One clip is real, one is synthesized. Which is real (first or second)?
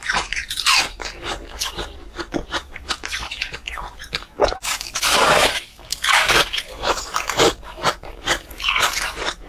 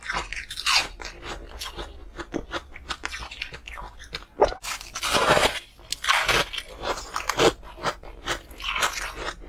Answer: second